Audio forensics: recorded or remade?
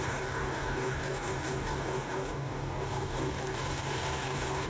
remade